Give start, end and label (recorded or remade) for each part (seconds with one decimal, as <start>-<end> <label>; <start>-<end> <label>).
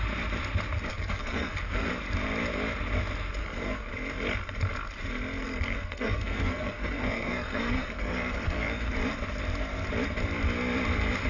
0.0-0.9 recorded; 0.9-1.9 remade; 1.9-3.4 recorded; 3.4-3.9 remade; 3.9-5.4 recorded; 5.4-8.9 remade; 8.9-11.3 recorded